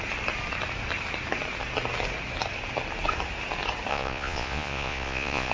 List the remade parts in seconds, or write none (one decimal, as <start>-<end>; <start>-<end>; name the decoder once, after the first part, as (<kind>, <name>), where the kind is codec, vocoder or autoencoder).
3.9-5.5 (vocoder, Vocos)